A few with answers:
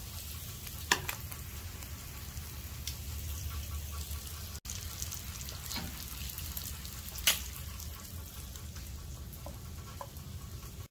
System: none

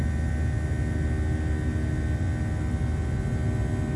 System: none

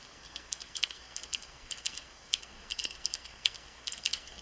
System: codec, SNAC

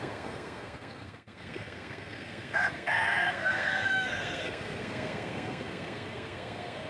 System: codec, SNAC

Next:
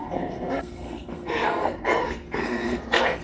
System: codec, SNAC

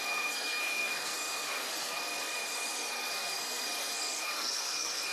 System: codec, SNAC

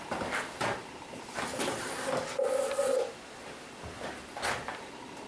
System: none